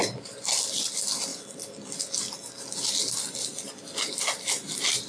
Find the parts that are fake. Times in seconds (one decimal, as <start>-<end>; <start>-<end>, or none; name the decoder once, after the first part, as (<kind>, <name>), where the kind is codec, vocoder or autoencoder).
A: none